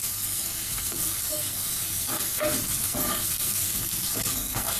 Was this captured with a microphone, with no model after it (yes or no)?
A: no